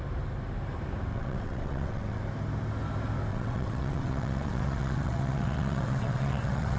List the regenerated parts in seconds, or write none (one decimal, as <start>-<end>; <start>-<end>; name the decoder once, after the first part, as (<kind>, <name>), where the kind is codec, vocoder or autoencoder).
1.1-2.2 (vocoder, WaveNeXt); 3.3-6.8